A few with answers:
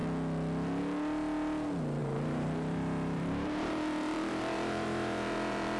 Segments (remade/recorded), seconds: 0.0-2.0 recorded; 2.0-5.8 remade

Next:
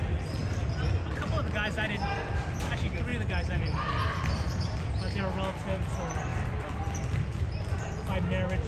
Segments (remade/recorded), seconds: 0.0-8.7 recorded

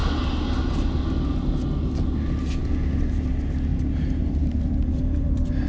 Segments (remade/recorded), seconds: 0.0-3.7 recorded; 3.7-5.7 remade